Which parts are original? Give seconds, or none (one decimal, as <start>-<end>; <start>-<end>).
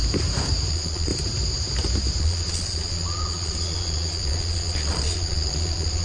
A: 0.0-0.7; 1.1-2.2